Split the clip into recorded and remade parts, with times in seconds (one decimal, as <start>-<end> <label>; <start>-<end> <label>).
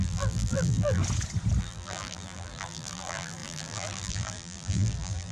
0.0-1.0 remade; 1.0-1.6 recorded; 1.6-5.3 remade